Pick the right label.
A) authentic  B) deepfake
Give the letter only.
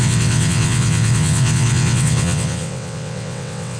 B